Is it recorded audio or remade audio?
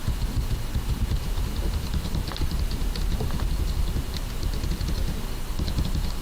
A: recorded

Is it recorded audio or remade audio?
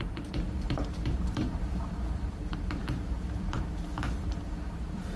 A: remade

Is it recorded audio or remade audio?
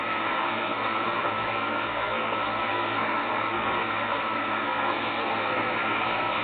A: remade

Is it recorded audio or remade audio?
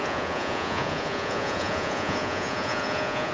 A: remade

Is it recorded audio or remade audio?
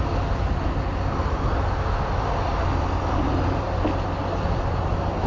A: recorded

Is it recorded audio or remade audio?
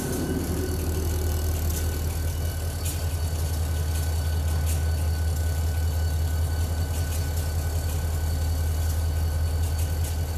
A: recorded